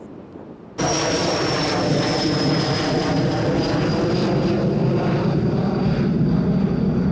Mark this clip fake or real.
real